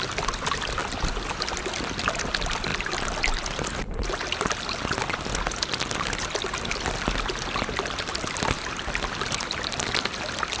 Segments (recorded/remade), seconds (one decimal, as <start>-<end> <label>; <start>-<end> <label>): 0.0-2.7 recorded; 2.7-3.8 remade; 3.8-10.6 recorded